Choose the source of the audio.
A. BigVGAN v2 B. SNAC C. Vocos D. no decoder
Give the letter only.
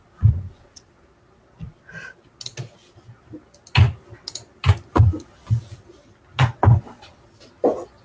D